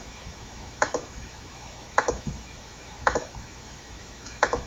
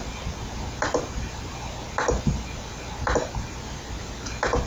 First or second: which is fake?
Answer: first